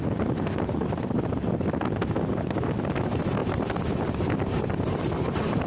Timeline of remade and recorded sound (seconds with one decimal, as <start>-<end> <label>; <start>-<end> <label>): 0.0-5.7 recorded